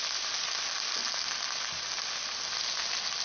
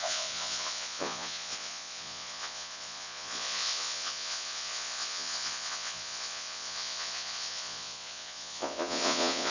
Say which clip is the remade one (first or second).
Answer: second